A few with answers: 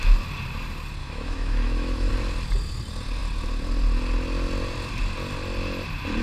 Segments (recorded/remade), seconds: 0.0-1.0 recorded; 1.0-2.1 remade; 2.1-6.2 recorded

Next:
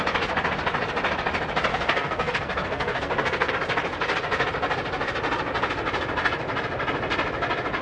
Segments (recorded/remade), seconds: 0.0-1.7 recorded; 1.7-3.5 remade; 3.5-7.8 recorded

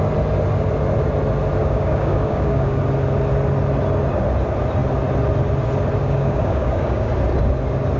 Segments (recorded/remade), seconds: 0.0-1.6 recorded; 1.6-2.8 remade; 2.8-6.0 recorded; 6.0-7.1 remade; 7.1-8.0 recorded

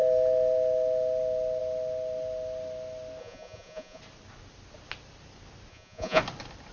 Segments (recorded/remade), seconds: 0.0-3.2 recorded; 3.2-4.0 remade; 4.0-5.7 recorded; 5.7-6.2 remade; 6.2-6.7 recorded